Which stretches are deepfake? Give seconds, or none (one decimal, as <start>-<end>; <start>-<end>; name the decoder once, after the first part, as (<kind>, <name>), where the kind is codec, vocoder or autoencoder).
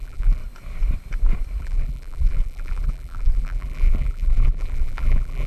0.0-0.4 (vocoder, BigVGAN v2); 1.6-5.5